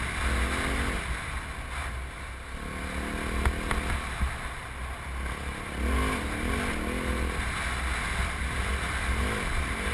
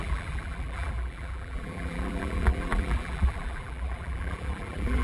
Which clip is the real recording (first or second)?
first